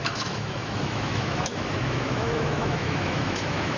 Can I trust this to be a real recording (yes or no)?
no